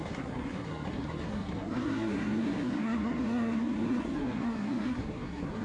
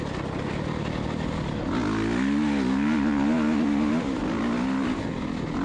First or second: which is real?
second